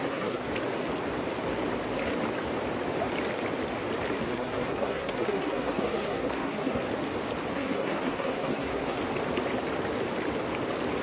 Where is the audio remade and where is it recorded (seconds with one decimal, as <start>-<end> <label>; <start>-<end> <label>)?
0.0-0.5 remade; 0.5-4.3 recorded; 4.3-6.8 remade; 6.8-7.5 recorded; 7.5-9.0 remade; 9.0-11.0 recorded